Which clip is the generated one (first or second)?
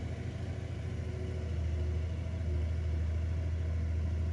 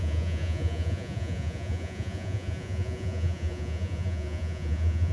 second